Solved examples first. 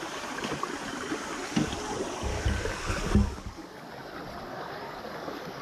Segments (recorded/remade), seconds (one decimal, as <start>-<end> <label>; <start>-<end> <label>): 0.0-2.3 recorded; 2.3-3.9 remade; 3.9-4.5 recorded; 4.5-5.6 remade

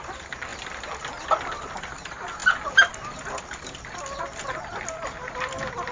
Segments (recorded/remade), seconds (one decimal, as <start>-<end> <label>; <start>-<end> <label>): 0.0-5.9 recorded

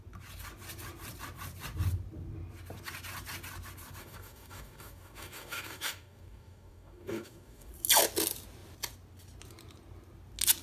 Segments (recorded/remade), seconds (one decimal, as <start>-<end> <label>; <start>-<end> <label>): 0.0-4.0 recorded; 4.0-7.7 remade; 7.7-10.6 recorded

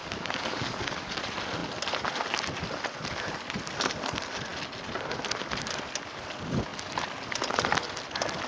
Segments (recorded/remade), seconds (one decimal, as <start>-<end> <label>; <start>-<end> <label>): 0.0-1.2 remade; 1.2-8.5 recorded